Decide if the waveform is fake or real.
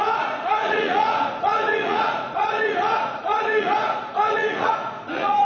fake